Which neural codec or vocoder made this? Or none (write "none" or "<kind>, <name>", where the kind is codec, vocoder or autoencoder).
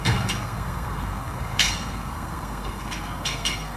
codec, SNAC